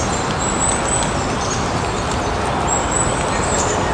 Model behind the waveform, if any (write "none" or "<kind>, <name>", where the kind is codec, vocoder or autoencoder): none